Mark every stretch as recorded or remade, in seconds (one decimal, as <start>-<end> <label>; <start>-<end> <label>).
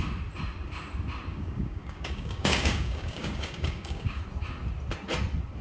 0.0-1.3 recorded; 1.3-4.2 remade; 4.2-5.6 recorded